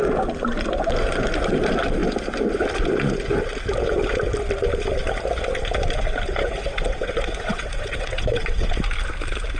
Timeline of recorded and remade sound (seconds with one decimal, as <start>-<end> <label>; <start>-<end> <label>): 0.0-6.4 recorded; 6.4-8.8 remade; 8.8-9.6 recorded